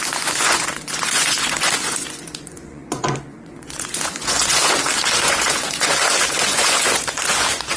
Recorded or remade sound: remade